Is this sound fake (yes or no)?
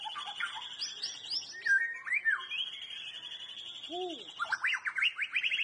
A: no